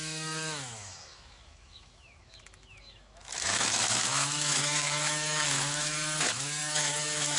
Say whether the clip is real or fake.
fake